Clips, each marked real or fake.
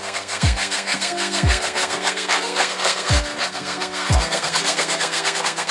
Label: fake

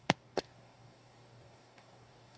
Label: fake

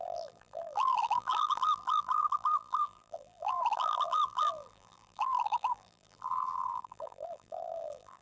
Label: fake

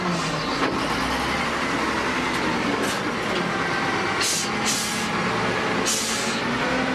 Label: real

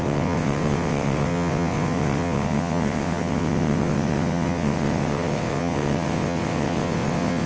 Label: fake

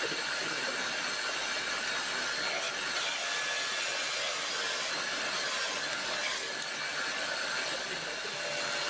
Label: real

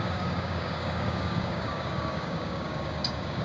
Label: fake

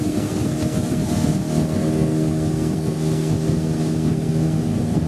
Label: fake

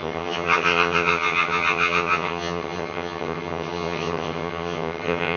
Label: fake